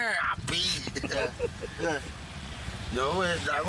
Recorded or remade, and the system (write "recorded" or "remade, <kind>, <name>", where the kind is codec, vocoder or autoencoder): remade, vocoder, Vocos